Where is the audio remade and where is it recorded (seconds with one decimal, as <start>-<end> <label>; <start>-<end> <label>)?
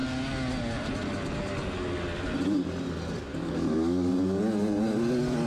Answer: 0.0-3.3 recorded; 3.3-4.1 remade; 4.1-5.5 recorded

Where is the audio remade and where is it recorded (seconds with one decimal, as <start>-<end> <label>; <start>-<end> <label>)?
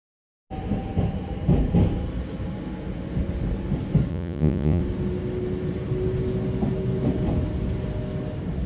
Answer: 0.0-4.1 recorded; 4.1-4.8 remade; 4.8-8.7 recorded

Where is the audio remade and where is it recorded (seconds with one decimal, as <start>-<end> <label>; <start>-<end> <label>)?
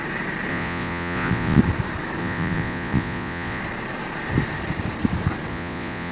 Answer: 0.0-0.5 recorded; 0.5-1.6 remade; 1.6-2.2 recorded; 2.2-3.6 remade; 3.6-5.5 recorded; 5.5-6.1 remade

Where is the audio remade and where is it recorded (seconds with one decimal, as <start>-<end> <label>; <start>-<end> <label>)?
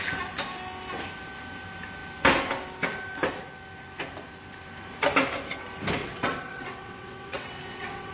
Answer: 0.0-6.0 recorded; 6.0-8.1 remade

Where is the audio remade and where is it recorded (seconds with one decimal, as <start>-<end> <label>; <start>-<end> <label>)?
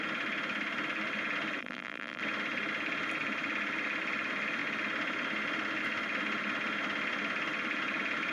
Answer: 0.0-1.6 recorded; 1.6-2.2 remade; 2.2-8.3 recorded